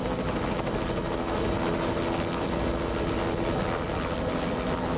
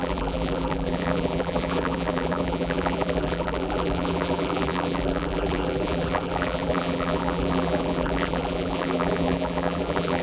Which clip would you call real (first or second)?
first